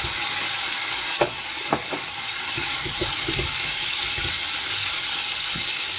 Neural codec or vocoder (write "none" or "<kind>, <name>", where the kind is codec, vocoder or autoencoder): codec, DAC